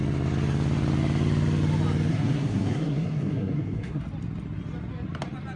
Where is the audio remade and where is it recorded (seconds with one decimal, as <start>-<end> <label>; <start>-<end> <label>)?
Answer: 0.0-2.1 recorded; 2.1-4.0 remade; 4.0-5.6 recorded